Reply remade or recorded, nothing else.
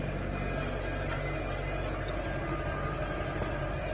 recorded